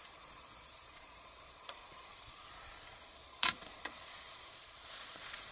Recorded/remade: remade